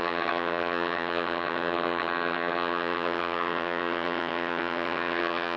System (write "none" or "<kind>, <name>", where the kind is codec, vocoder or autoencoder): vocoder, HiFi-GAN